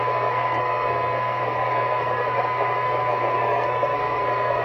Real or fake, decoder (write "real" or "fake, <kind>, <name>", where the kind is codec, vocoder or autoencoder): fake, codec, SNAC